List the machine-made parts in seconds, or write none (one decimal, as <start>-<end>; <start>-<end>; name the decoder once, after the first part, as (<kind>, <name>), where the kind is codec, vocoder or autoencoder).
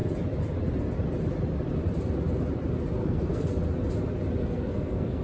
3.0-3.5 (codec, SNAC); 4.4-5.2